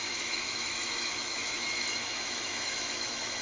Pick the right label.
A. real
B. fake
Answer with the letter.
B